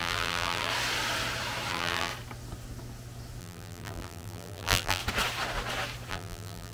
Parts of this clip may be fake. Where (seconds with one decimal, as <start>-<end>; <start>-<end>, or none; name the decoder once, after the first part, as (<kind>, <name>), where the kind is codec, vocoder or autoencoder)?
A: 0.0-0.7 (vocoder, BigVGAN v2); 1.7-2.1; 3.4-5.0; 6.1-6.7